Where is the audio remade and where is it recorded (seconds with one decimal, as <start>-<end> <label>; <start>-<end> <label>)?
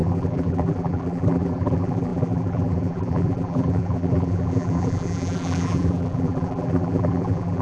0.0-7.6 remade